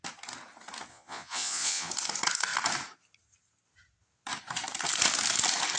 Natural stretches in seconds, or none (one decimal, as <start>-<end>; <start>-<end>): 0.0-0.9; 1.9-5.8